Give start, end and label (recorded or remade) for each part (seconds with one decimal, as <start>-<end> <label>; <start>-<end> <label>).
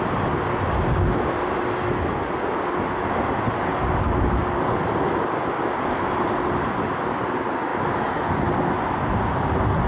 0.0-9.9 recorded